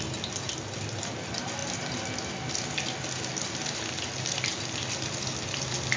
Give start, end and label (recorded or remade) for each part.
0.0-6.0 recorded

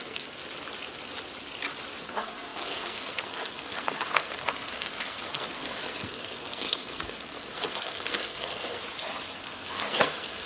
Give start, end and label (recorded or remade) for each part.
0.0-0.4 remade; 0.4-2.0 recorded; 2.0-8.8 remade; 8.8-9.3 recorded; 9.3-10.5 remade

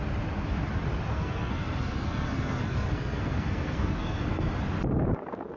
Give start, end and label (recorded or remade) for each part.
0.0-1.1 recorded; 1.1-4.5 remade; 4.5-5.6 recorded

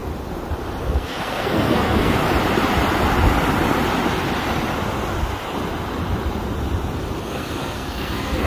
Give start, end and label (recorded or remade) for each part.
0.0-0.8 recorded; 0.8-2.2 remade; 2.2-7.2 recorded; 7.2-8.5 remade

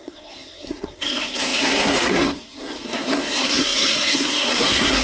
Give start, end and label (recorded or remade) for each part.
0.0-5.0 remade

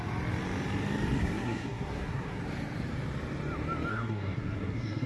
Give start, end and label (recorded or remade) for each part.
0.0-1.2 recorded; 1.2-2.4 remade; 2.4-3.9 recorded; 3.9-5.1 remade

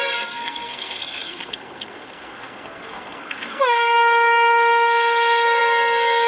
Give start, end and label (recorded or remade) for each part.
0.0-6.3 remade